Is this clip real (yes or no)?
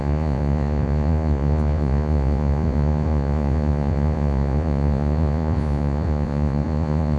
no